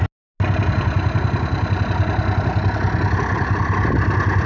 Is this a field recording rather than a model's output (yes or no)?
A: yes